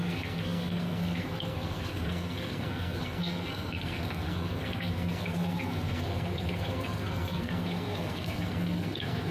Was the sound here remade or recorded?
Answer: remade